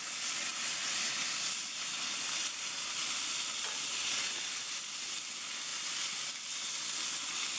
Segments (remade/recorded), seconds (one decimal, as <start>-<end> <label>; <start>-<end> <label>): 0.0-0.5 recorded; 0.5-3.6 remade; 3.6-5.7 recorded; 5.7-6.2 remade; 6.2-7.6 recorded